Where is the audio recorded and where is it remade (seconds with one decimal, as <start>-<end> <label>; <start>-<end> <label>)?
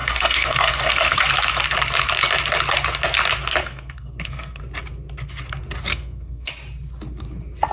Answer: 0.0-1.3 remade; 1.3-3.6 recorded; 3.6-4.6 remade; 4.6-5.9 recorded; 5.9-6.5 remade; 6.5-7.7 recorded